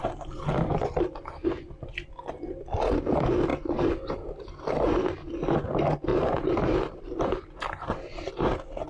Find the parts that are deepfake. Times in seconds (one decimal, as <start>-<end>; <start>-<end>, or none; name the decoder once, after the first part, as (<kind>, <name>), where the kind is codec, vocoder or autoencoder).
6.1-8.3 (vocoder, BigVGAN v2)